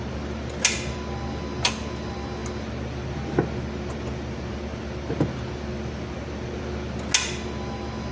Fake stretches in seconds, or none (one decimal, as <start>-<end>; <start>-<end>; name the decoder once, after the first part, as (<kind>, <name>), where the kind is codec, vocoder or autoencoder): none